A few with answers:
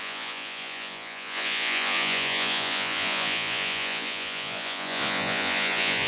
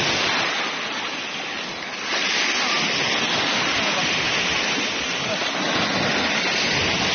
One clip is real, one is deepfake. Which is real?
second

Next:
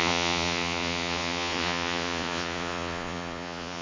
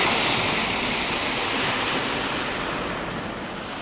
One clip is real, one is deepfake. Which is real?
second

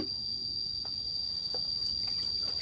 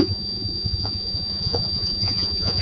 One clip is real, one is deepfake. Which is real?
first